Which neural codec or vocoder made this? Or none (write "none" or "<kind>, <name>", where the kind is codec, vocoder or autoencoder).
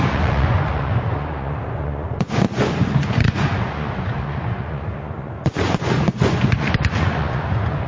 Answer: vocoder, Vocos